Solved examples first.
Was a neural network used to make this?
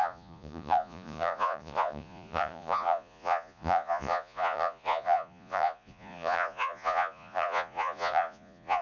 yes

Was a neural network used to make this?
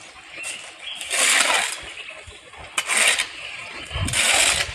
no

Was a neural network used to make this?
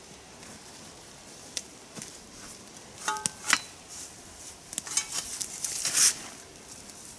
no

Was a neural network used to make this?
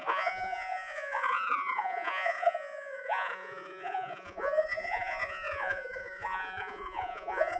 yes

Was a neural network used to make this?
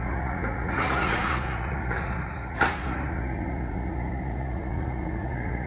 yes